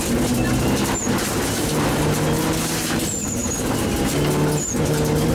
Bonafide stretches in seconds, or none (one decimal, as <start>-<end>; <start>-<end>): 0.0-5.3